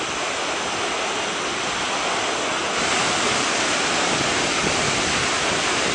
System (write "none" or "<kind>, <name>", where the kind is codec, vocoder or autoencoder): none